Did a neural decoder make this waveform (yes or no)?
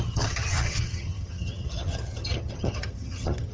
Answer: yes